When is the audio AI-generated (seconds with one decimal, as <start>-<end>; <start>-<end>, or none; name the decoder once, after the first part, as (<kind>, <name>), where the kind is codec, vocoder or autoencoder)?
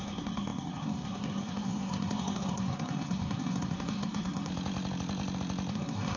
0.0-4.5 (codec, SNAC); 5.7-6.2